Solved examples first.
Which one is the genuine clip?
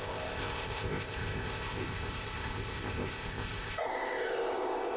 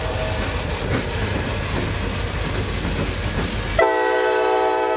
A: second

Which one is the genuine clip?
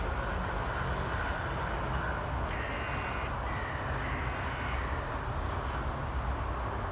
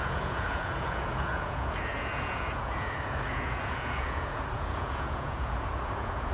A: first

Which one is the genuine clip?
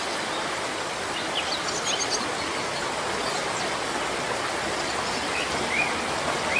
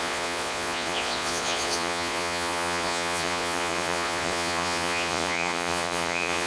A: first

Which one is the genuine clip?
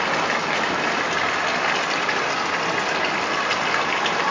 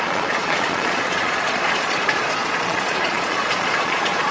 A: first